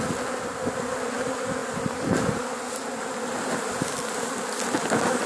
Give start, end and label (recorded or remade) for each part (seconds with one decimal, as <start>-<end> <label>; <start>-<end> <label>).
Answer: 0.0-5.3 recorded